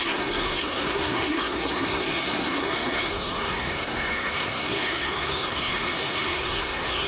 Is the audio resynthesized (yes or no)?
yes